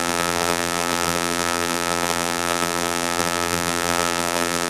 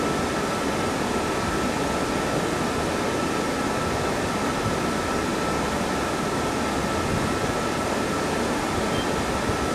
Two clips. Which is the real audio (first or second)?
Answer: second